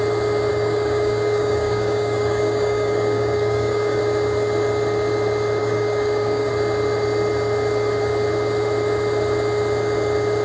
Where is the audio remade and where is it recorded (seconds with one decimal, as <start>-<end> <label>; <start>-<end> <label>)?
0.0-0.5 recorded; 0.5-4.0 remade; 4.0-5.6 recorded; 5.6-6.5 remade; 6.5-10.4 recorded